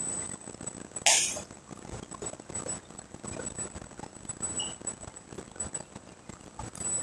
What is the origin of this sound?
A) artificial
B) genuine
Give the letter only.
B